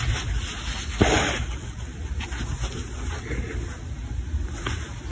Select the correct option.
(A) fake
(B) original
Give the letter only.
B